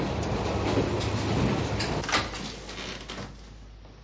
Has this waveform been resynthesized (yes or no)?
no